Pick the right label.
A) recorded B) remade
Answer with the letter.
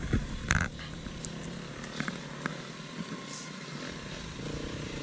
A